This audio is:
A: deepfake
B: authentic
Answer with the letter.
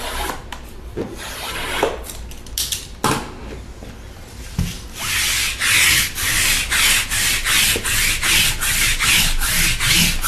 B